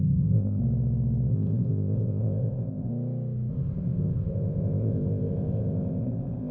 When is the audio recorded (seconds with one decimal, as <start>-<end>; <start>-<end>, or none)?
0.6-1.3; 2.9-3.5